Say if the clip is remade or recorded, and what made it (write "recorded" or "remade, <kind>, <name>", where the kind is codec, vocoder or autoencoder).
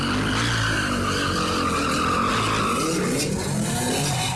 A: recorded